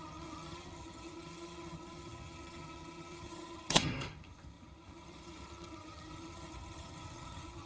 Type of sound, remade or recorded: remade